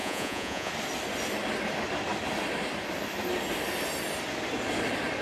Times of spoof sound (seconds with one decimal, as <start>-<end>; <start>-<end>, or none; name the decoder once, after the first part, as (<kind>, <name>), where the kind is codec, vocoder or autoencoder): 0.0-0.7 (vocoder, Vocos)